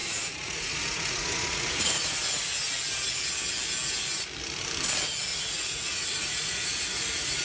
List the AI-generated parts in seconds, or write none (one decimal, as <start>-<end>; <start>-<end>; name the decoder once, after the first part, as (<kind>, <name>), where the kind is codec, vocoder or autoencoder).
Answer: 0.0-2.0 (vocoder, Vocos); 5.3-7.4